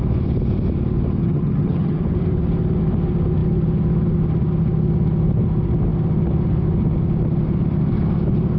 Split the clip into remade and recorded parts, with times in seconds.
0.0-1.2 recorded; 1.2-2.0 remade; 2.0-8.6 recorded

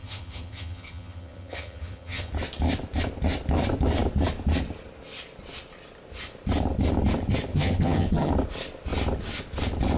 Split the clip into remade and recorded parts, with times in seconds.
0.0-2.3 remade; 2.3-7.5 recorded; 7.5-8.3 remade; 8.3-10.0 recorded

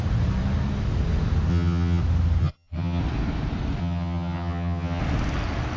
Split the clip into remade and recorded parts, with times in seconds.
0.0-1.5 recorded; 1.5-2.0 remade; 2.0-2.4 recorded; 2.4-3.0 remade; 3.0-3.8 recorded; 3.8-5.0 remade; 5.0-5.8 recorded

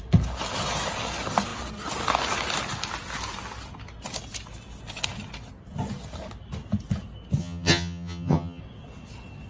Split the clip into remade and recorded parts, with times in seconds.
0.0-7.4 recorded; 7.4-8.6 remade; 8.6-9.5 recorded

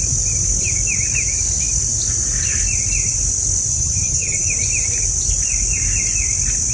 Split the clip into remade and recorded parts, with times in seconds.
0.0-3.7 recorded; 3.7-4.5 remade; 4.5-6.7 recorded

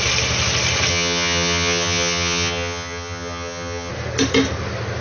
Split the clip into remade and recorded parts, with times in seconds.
0.0-0.9 recorded; 0.9-3.9 remade; 3.9-5.0 recorded